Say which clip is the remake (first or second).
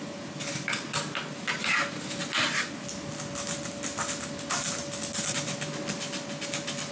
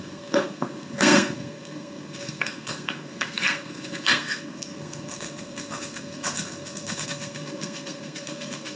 second